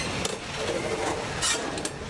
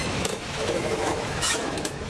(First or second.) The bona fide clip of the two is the first